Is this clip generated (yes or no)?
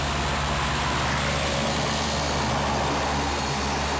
no